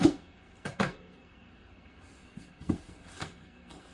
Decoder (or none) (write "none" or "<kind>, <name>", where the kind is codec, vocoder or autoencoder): codec, SNAC